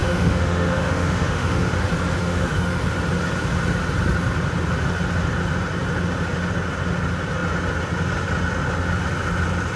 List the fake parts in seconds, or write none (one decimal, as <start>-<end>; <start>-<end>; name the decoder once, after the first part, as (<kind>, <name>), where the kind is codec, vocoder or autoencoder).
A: 0.0-1.8 (autoencoder, DAC-VAE); 2.2-2.8